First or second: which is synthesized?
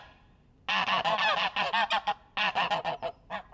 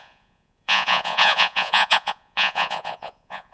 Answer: second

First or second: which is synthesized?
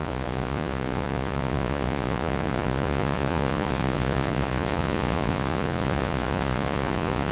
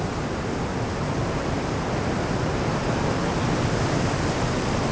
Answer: first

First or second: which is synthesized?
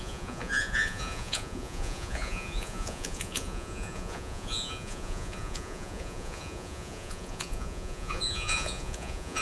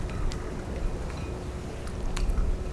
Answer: first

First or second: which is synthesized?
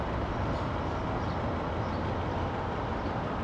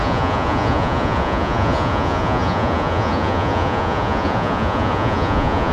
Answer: second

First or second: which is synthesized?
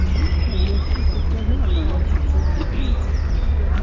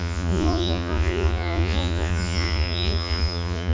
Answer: second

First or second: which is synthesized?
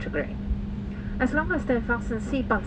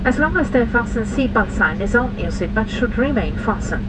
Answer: second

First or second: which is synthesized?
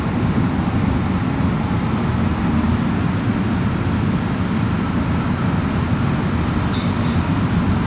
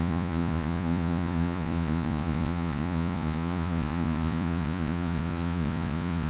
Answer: second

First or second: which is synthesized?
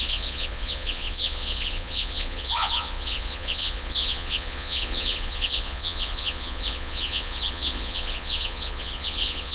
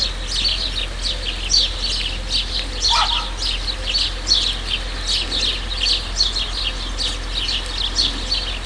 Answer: first